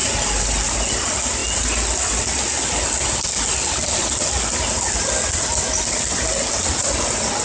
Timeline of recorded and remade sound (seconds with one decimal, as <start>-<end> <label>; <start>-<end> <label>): 0.0-7.4 recorded